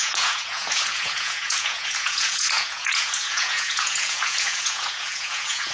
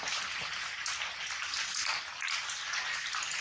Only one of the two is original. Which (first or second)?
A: second